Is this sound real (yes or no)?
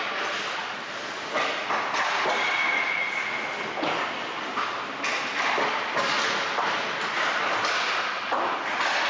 yes